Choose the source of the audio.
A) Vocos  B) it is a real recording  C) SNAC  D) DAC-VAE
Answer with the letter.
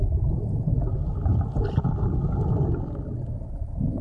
B